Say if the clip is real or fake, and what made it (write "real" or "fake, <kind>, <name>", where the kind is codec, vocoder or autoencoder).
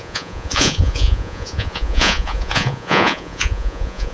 fake, vocoder, Vocos